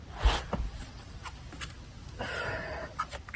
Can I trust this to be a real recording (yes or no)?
yes